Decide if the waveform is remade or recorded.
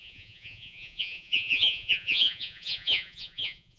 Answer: remade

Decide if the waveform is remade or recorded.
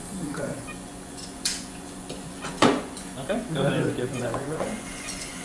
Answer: remade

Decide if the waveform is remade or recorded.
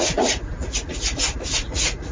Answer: remade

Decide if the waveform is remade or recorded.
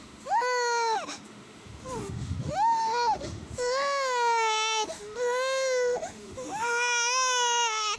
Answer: remade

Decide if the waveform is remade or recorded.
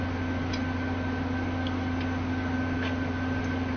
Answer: recorded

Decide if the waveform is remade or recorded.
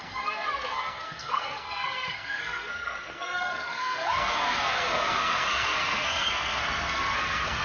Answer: remade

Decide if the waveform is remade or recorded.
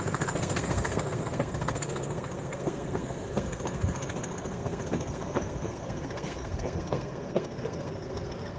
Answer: remade